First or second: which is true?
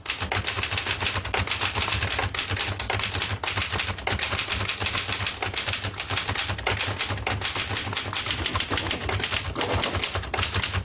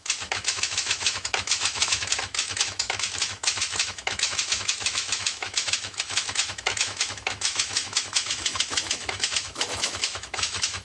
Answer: first